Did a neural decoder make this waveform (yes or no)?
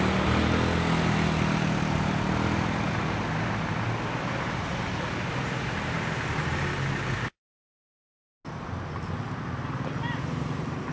no